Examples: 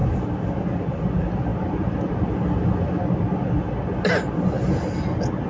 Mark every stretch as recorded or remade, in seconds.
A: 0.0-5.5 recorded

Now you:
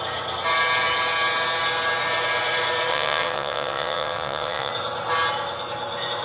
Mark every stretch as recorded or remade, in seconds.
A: 0.0-2.9 recorded; 2.9-4.7 remade; 4.7-6.2 recorded

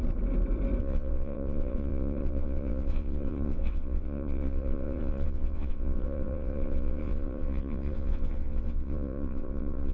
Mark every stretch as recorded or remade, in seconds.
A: 0.0-0.8 recorded; 0.8-9.9 remade

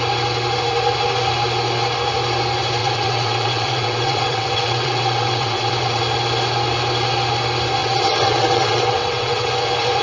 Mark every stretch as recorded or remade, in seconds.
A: 0.0-2.8 recorded; 2.8-6.0 remade; 6.0-7.8 recorded; 7.8-9.5 remade; 9.5-10.0 recorded

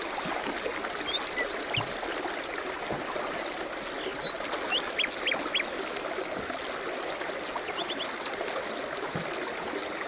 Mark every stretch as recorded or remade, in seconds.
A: 0.0-10.1 recorded

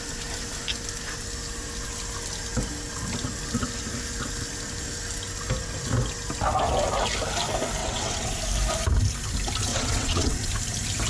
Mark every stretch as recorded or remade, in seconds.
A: 0.0-7.8 recorded; 7.8-8.3 remade; 8.3-9.7 recorded; 9.7-10.5 remade; 10.5-11.1 recorded